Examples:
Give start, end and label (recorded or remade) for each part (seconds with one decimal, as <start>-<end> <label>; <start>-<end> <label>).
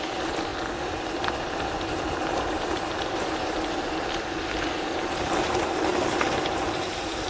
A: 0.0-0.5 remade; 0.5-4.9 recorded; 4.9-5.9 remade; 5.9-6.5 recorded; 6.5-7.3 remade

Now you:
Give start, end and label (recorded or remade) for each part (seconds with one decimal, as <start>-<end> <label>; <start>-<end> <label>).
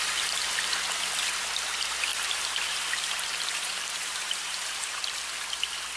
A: 0.0-2.1 recorded; 2.1-5.3 remade; 5.3-6.0 recorded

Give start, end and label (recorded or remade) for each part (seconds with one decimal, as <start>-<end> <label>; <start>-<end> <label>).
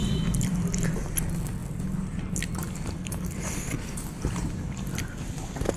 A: 0.0-1.1 remade; 1.1-1.6 recorded; 1.6-5.1 remade; 5.1-5.8 recorded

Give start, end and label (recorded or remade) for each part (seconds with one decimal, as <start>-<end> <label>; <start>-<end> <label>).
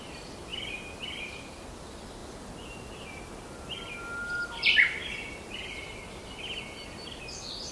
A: 0.0-0.5 remade; 0.5-1.0 recorded; 1.0-2.2 remade; 2.2-4.2 recorded; 4.2-5.0 remade; 5.0-5.5 recorded; 5.5-7.7 remade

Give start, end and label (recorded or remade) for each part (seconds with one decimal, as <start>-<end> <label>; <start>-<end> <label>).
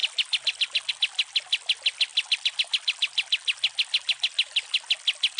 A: 0.0-0.9 remade; 0.9-2.1 recorded; 2.1-4.9 remade; 4.9-5.4 recorded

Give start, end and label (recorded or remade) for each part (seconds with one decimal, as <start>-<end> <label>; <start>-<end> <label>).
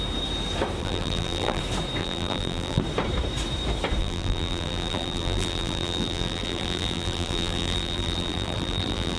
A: 0.0-0.8 recorded; 0.8-1.6 remade; 1.6-2.0 recorded; 2.0-2.8 remade; 2.8-4.0 recorded; 4.0-9.2 remade